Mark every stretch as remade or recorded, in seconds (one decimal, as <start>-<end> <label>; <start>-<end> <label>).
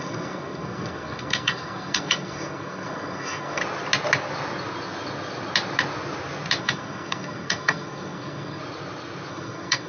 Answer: 0.0-3.6 remade; 3.6-6.6 recorded; 6.6-8.6 remade; 8.6-9.3 recorded; 9.3-9.9 remade